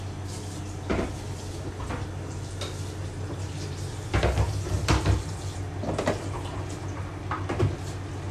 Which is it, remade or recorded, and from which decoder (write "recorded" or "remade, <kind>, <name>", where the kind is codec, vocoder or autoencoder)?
recorded